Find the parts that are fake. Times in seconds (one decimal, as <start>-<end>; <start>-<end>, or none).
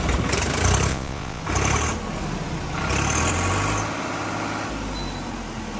0.9-1.4